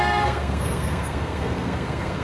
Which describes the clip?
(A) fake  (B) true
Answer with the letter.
A